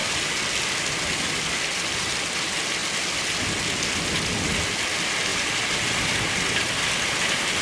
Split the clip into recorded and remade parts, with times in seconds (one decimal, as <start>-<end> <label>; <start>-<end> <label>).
0.0-7.6 recorded